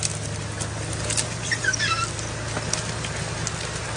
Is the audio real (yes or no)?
yes